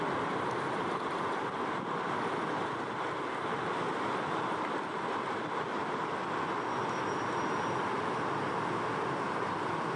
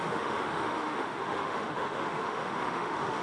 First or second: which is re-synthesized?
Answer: second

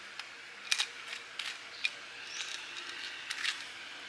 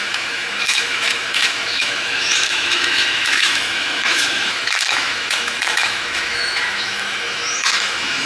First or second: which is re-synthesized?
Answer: second